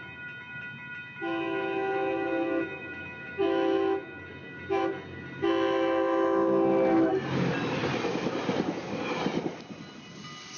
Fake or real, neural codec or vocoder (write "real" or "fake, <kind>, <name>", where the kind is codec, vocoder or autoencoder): real